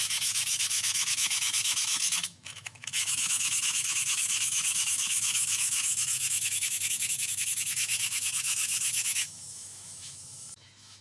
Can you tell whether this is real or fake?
fake